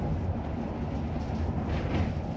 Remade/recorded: recorded